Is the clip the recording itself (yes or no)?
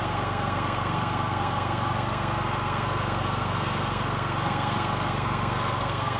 no